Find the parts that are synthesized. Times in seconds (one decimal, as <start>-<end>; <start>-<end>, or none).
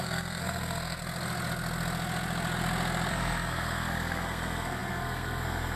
0.0-1.0; 3.1-5.8